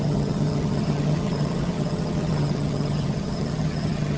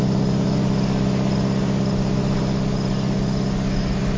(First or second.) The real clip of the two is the second